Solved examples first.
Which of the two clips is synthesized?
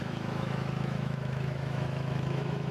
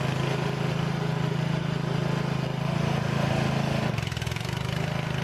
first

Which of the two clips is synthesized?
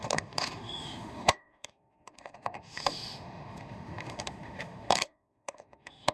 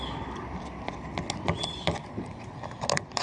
first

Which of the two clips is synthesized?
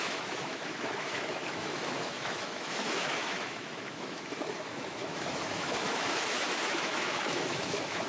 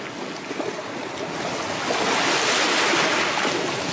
first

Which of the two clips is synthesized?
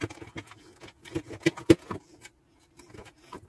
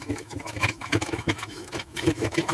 second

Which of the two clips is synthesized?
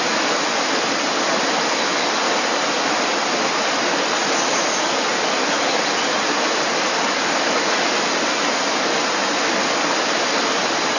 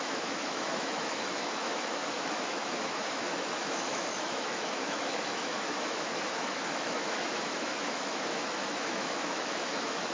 second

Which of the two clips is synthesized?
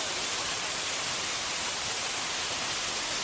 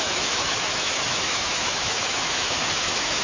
second